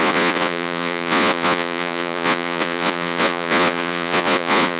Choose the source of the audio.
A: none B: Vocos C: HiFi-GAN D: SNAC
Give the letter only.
B